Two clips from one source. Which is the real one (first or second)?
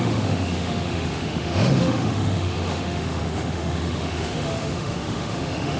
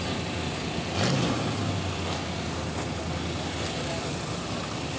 second